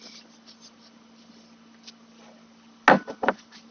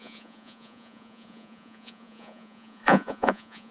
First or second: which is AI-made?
second